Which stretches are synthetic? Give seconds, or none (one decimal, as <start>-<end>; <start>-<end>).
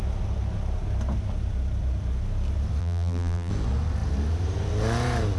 2.8-3.5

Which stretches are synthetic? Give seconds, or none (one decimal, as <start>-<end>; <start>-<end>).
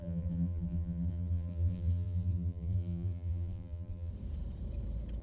0.0-4.1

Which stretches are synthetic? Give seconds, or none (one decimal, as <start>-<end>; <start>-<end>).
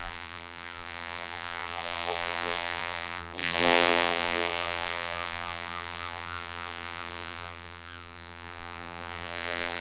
0.0-9.8